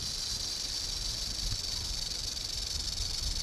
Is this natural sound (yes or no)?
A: yes